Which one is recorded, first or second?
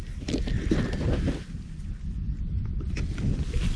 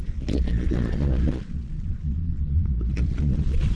first